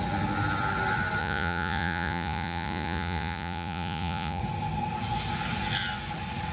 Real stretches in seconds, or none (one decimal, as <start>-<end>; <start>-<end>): 0.0-1.2; 4.4-6.5